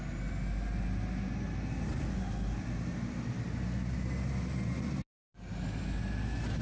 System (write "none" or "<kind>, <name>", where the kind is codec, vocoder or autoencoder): none